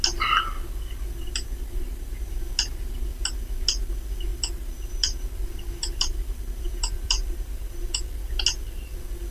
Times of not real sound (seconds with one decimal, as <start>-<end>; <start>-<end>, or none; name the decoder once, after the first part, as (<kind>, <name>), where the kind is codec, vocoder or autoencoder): 1.2-2.3 (vocoder, BigVGAN v2); 4.3-8.3